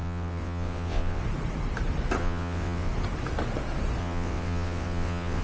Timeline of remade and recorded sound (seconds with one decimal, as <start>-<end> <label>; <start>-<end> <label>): 0.0-1.2 remade; 1.2-2.2 recorded; 2.2-2.9 remade; 2.9-4.0 recorded; 4.0-5.4 remade